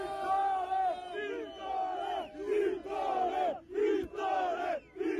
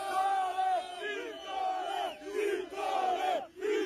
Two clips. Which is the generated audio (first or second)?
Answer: second